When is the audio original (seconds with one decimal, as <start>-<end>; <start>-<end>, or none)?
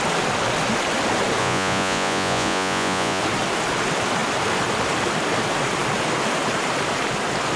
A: 0.0-1.4; 3.2-7.6